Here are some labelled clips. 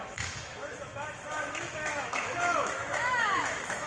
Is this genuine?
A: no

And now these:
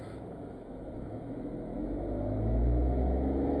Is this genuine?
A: no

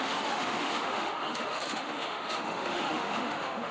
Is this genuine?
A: no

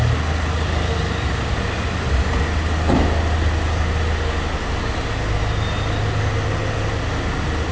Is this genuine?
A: yes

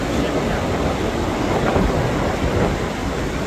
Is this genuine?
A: yes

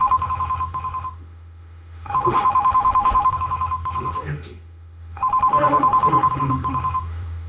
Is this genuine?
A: no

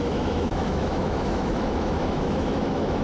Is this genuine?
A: no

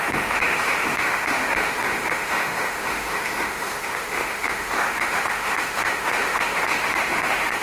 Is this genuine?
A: no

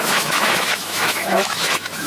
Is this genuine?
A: no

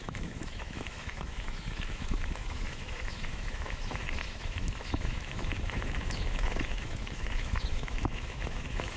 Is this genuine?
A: no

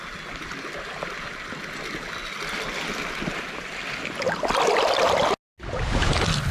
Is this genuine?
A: yes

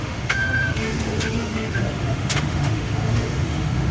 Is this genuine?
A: no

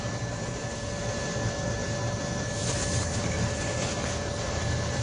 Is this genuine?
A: yes